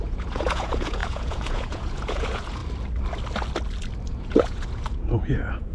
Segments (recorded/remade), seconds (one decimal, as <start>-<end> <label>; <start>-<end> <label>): 0.0-2.6 remade; 2.6-4.2 recorded; 4.2-5.7 remade